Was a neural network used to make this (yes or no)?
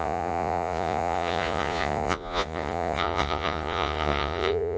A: yes